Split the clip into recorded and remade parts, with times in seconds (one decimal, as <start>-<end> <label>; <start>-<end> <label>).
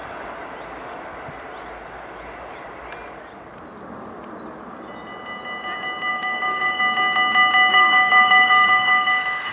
0.0-6.1 recorded; 6.1-6.8 remade; 6.8-7.7 recorded; 7.7-9.5 remade